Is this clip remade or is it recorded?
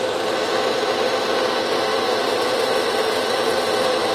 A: remade